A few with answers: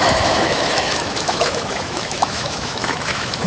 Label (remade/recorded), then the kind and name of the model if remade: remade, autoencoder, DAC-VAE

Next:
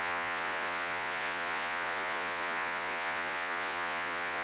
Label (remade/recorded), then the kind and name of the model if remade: remade, vocoder, Vocos